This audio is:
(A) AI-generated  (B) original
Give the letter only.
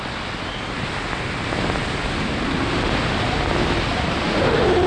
B